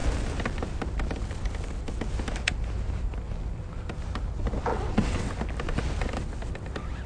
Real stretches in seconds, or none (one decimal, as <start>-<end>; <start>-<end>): 0.0-4.7; 5.3-7.1